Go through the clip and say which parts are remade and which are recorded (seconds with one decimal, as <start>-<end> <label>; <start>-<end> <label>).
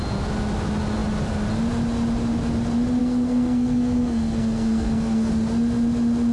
0.0-3.0 recorded; 3.0-5.3 remade; 5.3-6.3 recorded